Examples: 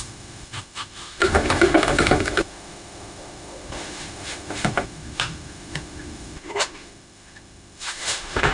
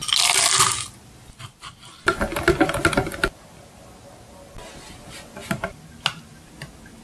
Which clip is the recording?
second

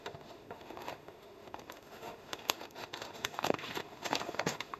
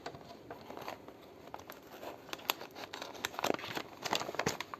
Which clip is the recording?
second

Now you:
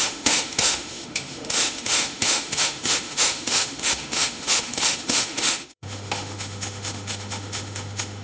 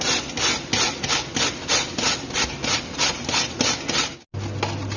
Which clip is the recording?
second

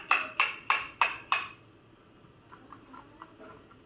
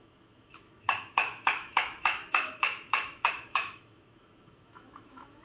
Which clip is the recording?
first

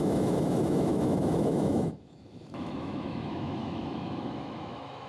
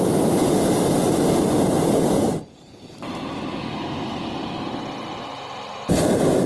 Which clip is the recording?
second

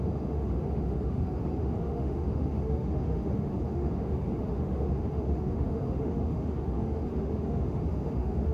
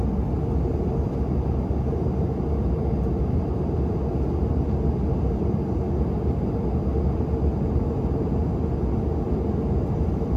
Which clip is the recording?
second